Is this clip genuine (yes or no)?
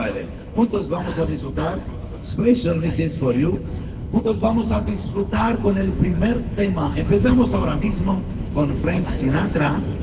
no